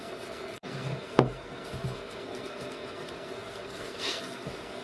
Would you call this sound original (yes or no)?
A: no